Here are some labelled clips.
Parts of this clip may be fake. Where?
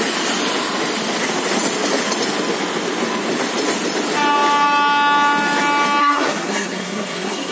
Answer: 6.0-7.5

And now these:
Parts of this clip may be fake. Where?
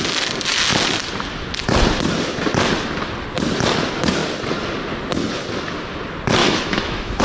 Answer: 6.4-7.2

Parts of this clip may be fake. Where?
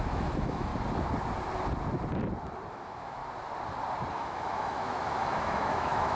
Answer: 0.0-0.7; 2.7-3.2; 4.1-6.1